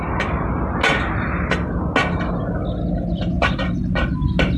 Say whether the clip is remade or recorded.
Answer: recorded